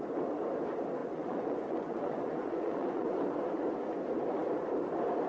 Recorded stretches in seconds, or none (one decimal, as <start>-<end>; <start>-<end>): 0.0-1.0; 3.2-5.3